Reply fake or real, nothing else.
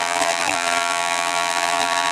fake